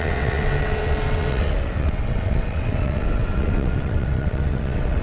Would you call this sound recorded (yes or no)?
no